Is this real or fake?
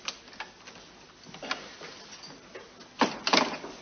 real